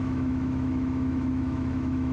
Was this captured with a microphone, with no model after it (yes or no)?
no